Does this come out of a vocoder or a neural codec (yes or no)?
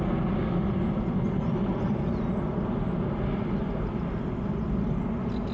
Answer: no